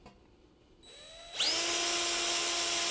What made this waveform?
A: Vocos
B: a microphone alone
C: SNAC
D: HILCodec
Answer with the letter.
B